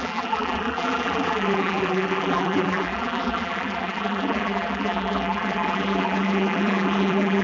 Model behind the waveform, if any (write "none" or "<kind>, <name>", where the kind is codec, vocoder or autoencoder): vocoder, BigVGAN v2